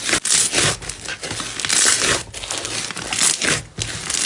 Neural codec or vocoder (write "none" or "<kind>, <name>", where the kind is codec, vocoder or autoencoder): none